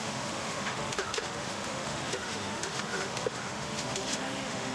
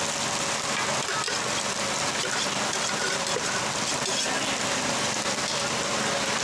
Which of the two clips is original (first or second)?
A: second